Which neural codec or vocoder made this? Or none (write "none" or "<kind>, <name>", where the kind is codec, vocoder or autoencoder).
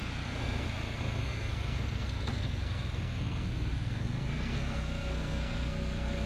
codec, SNAC